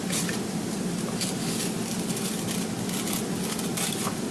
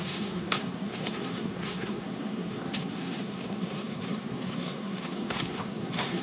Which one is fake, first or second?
second